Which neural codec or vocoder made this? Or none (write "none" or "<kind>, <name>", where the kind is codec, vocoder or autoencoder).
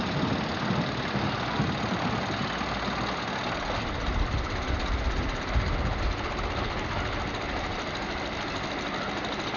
none